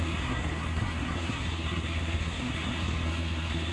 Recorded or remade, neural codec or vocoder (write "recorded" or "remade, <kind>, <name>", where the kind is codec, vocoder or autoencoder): remade, codec, SNAC